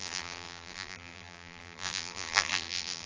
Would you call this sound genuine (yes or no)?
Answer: no